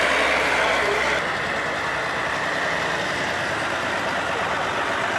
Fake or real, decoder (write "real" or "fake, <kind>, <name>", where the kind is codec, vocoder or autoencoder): real